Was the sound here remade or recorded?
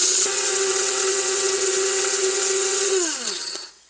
remade